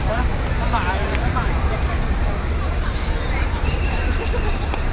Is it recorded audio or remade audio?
remade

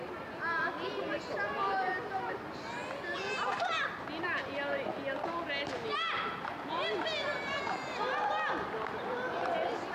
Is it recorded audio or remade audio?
recorded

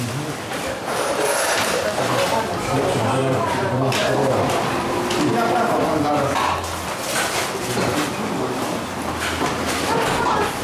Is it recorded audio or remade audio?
recorded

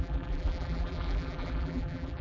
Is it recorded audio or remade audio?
remade